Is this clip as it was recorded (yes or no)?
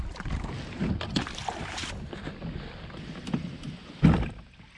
yes